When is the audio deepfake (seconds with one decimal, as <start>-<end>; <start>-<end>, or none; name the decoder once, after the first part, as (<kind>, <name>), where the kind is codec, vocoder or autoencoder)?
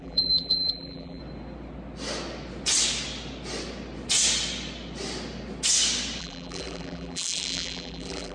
0.0-1.2 (vocoder, BigVGAN v2); 6.2-8.3